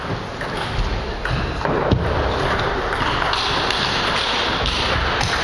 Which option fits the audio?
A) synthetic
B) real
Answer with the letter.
B